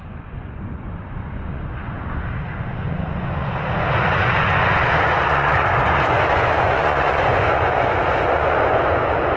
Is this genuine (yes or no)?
no